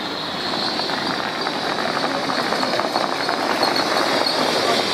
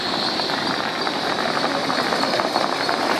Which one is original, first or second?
first